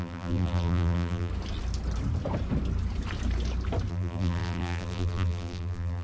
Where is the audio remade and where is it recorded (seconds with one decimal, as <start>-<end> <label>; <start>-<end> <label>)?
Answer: 0.0-1.3 remade; 1.3-3.9 recorded; 3.9-6.0 remade